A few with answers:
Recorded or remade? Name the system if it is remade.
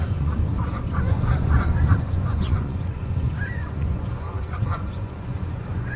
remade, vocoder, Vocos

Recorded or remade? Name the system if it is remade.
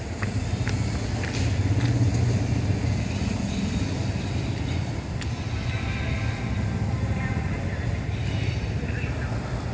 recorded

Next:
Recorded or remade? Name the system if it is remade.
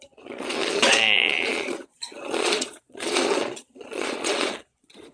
remade, vocoder, Vocos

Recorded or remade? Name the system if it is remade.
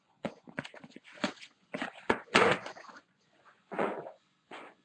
remade, vocoder, Vocos